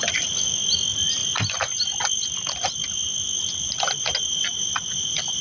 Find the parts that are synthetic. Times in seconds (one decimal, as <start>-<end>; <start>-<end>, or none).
none